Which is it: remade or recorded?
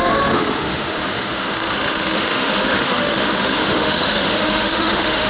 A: remade